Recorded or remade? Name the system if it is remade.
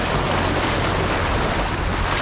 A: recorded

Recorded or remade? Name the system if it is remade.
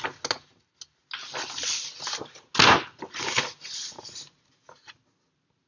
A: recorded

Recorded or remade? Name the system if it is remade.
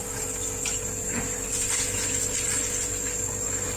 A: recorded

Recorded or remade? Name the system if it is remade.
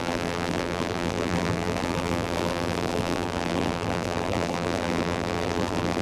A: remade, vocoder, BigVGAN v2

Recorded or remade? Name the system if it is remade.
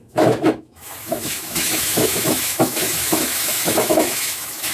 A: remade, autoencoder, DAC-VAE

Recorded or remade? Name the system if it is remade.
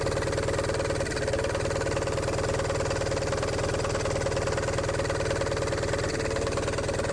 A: recorded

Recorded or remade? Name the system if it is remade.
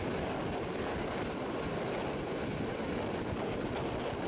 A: recorded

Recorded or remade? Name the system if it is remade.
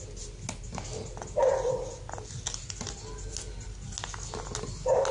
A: recorded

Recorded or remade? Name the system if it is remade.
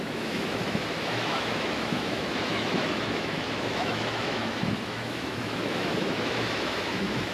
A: remade, autoencoder, DAC-VAE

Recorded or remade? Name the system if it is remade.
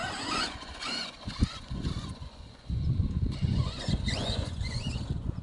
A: remade, vocoder, Vocos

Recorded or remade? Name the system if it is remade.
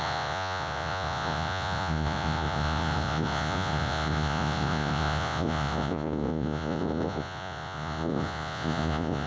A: remade, vocoder, Vocos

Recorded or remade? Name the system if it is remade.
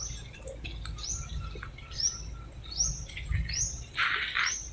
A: recorded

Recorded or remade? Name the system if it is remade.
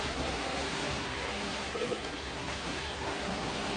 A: remade, codec, SNAC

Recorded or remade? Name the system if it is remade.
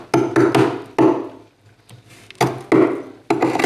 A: recorded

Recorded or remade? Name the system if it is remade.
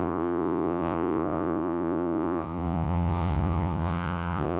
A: remade, vocoder, Vocos